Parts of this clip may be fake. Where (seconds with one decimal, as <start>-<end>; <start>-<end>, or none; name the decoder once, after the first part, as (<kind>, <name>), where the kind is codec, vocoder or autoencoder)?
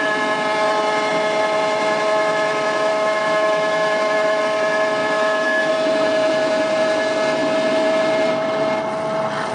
2.9-4.4 (autoencoder, DAC-VAE); 5.0-5.7